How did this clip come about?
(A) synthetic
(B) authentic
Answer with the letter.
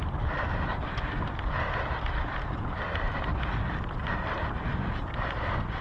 B